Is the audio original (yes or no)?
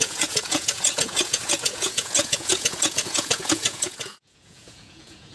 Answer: no